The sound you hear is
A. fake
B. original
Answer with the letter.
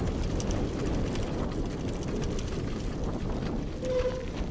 B